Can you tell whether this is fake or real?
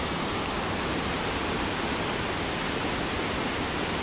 real